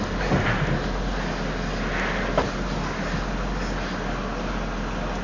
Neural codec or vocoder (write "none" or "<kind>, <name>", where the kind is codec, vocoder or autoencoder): none